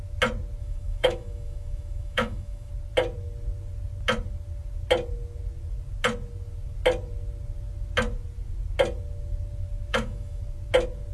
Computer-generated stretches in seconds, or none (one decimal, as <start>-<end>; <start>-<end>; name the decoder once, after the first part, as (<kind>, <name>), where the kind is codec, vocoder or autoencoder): 0.6-2.7 (autoencoder, DAC-VAE); 9.9-10.4